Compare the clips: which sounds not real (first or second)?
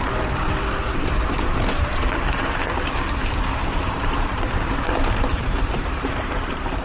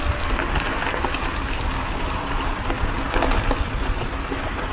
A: first